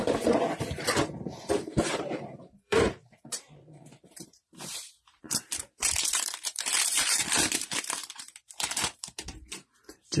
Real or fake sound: fake